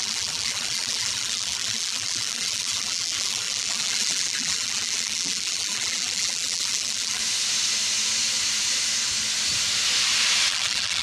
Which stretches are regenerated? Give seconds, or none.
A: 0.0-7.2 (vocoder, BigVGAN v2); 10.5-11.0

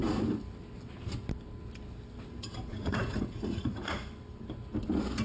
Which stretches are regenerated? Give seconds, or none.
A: 2.7-4.1 (vocoder, Vocos)

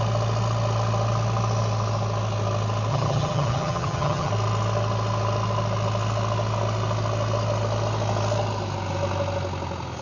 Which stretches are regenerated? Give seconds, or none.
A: 2.9-4.3 (vocoder, HiFi-GAN)

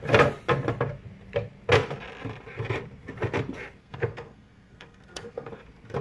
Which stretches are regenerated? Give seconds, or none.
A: 3.8-5.5 (codec, SNAC)

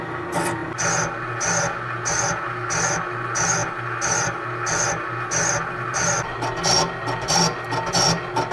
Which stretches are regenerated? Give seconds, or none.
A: none

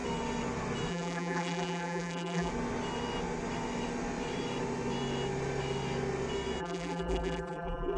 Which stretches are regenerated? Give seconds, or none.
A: 0.9-2.5 (vocoder, BigVGAN v2); 6.6-8.0

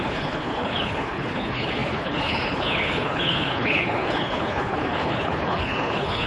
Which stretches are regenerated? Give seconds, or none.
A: 0.0-6.3 (codec, HILCodec)

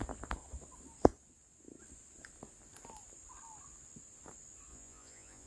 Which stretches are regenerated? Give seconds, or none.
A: 4.7-5.5 (vocoder, Vocos)